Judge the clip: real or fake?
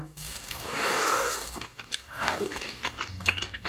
fake